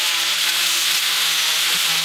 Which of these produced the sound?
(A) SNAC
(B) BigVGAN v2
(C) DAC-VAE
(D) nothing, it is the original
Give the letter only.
D